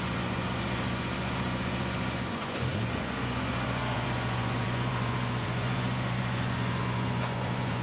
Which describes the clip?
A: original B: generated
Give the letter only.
B